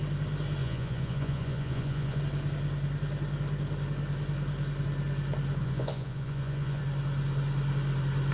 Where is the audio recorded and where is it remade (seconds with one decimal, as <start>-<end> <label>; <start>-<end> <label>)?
0.0-0.6 recorded; 0.6-2.2 remade; 2.2-5.6 recorded; 5.6-6.8 remade; 6.8-8.3 recorded